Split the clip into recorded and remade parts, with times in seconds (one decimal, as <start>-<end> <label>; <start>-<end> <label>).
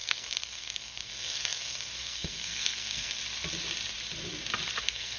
0.0-3.2 remade; 3.2-4.8 recorded; 4.8-5.2 remade